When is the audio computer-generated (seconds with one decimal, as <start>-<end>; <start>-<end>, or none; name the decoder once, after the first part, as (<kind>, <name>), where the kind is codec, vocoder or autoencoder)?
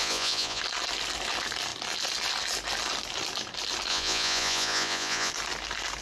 0.0-0.6 (vocoder, Vocos); 3.9-5.3